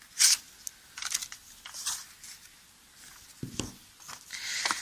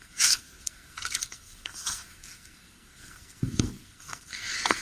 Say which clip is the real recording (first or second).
first